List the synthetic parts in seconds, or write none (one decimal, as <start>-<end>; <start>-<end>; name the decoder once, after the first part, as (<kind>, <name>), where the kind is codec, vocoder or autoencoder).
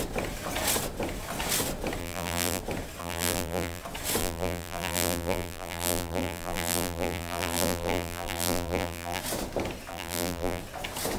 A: 2.0-2.6 (vocoder, BigVGAN v2); 3.0-3.8; 4.2-9.2; 9.9-10.6